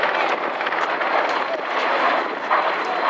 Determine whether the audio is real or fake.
real